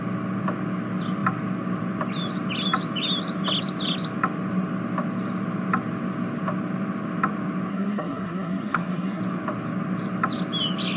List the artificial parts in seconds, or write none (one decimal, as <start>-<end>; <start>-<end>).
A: 7.7-9.2